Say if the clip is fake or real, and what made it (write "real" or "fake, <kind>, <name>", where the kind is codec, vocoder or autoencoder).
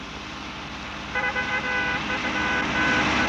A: real